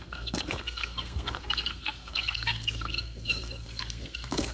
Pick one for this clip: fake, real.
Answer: fake